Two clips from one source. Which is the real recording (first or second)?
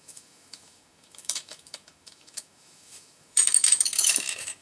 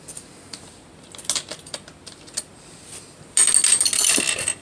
second